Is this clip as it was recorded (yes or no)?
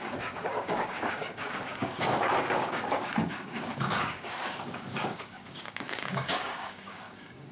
no